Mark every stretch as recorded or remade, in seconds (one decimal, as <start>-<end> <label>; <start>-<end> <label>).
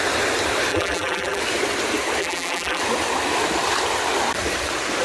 0.0-0.7 recorded; 0.7-1.4 remade; 1.4-2.2 recorded; 2.2-2.8 remade; 2.8-5.0 recorded